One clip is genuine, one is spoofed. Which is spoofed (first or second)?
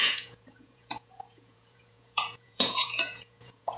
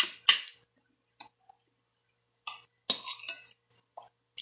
first